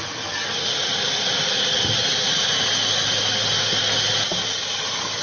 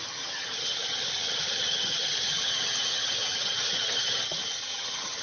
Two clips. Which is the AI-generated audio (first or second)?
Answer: second